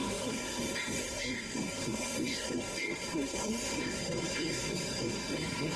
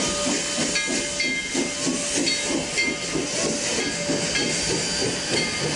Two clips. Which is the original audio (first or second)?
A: second